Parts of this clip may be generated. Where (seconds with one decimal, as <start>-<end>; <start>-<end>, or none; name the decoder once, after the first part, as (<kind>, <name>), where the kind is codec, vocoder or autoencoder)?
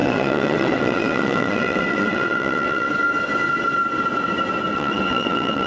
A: 0.0-2.9 (vocoder, WaveNeXt); 4.7-5.7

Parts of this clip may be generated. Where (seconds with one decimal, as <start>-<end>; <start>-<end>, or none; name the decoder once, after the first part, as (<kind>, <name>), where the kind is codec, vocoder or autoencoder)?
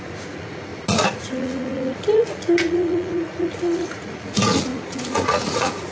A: 0.0-5.9 (vocoder, Vocos)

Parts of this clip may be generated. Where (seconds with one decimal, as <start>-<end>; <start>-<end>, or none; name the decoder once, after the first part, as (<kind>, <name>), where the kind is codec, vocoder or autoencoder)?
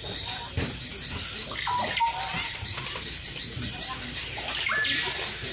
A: none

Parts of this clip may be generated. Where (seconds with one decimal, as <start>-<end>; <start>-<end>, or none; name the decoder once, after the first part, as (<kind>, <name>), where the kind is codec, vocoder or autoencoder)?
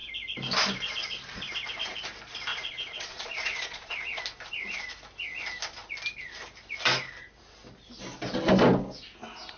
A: 2.5-4.2 (vocoder, Vocos)